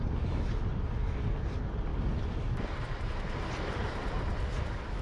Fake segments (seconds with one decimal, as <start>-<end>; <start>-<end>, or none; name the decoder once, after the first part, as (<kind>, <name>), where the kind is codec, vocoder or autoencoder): 1.9-5.0 (vocoder, BigVGAN v2)